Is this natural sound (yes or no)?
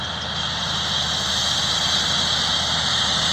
yes